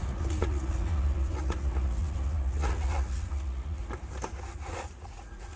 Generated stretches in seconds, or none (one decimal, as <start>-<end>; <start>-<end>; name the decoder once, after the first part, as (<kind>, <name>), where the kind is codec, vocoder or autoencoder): 0.0-3.8 (vocoder, Vocos); 4.5-5.6